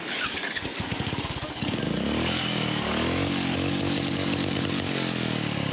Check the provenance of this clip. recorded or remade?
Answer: remade